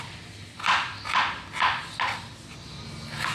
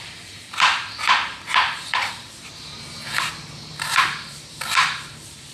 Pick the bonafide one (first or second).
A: first